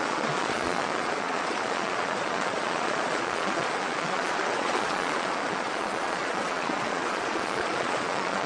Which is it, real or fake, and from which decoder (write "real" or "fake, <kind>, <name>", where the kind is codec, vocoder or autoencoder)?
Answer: fake, vocoder, Vocos